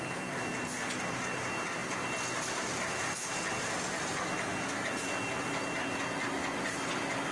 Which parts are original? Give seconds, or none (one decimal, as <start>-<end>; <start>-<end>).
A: 0.0-7.3